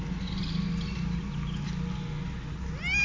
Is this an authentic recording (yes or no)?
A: yes